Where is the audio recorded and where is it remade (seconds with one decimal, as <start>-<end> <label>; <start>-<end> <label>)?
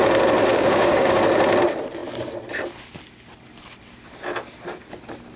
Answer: 0.0-0.5 recorded; 0.5-1.2 remade; 1.2-5.4 recorded